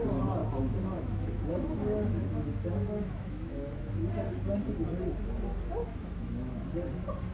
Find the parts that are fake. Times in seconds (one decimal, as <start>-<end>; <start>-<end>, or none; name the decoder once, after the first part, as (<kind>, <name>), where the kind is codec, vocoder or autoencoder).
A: 0.4-4.1 (autoencoder, DAC-VAE); 5.8-6.6